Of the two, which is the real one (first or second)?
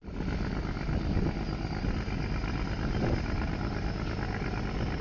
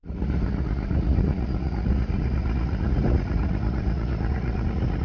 first